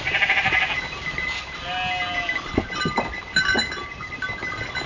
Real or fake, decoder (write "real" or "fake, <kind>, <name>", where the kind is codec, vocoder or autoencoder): real